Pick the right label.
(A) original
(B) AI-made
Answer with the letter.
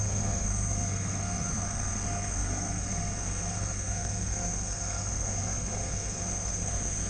B